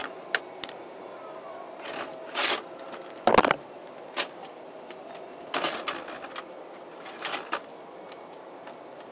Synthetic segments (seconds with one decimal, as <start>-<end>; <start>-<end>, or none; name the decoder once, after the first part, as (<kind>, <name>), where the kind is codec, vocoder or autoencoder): none